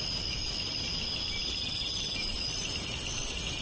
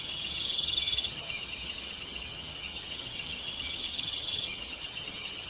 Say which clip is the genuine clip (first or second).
first